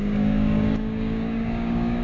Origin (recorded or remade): remade